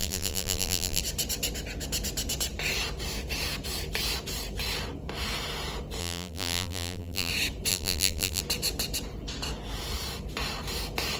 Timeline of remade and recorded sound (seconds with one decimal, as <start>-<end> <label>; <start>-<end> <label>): 0.0-1.0 remade; 1.0-6.0 recorded; 6.0-7.3 remade; 7.3-7.7 recorded; 7.7-8.4 remade; 8.4-11.2 recorded